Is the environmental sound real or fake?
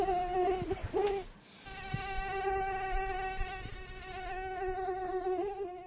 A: real